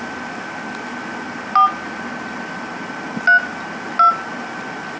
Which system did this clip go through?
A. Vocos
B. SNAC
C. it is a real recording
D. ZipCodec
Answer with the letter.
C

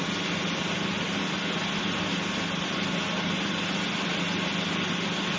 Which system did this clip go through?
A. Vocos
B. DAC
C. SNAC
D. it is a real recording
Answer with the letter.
D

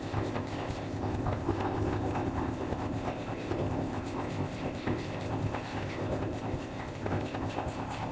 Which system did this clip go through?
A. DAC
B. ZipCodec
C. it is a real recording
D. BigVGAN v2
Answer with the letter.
B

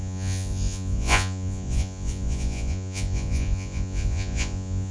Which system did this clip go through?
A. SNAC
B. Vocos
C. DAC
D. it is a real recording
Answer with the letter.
B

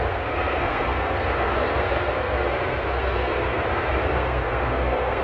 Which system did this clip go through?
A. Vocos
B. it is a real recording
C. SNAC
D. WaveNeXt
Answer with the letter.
C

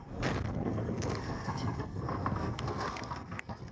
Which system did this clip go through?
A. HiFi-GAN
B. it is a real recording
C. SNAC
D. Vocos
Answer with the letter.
C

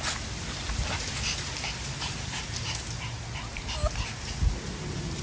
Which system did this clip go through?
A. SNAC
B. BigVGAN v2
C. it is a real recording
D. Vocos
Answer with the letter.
C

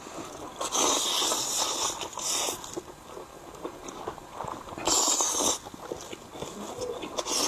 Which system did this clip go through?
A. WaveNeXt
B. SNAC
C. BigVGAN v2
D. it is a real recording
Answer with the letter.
D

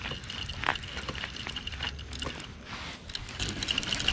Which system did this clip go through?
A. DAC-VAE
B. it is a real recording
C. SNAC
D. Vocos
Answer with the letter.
B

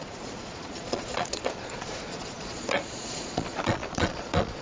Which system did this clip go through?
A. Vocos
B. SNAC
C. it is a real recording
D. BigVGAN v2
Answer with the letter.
A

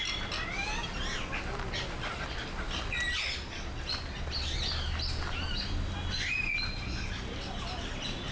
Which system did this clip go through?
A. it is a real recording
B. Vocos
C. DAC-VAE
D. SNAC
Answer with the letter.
A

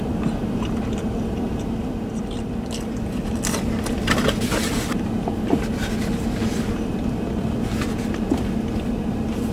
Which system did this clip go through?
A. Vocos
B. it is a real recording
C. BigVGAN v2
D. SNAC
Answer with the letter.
B